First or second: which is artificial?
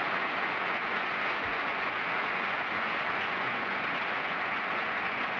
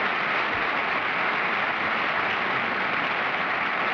first